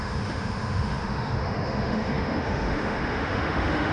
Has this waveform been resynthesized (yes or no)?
yes